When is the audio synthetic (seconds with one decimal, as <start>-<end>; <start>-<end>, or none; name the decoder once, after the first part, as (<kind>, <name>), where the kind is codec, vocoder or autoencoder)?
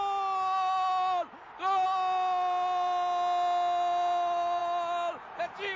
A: none